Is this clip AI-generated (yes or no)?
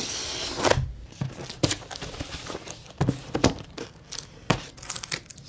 no